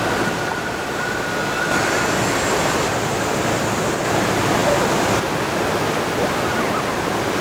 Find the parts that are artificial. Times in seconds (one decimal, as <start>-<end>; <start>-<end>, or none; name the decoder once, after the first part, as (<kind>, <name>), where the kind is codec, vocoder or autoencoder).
0.5-1.0 (vocoder, BigVGAN v2)